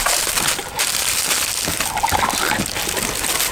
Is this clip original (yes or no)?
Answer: yes